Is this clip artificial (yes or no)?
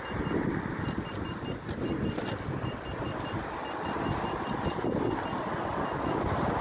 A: no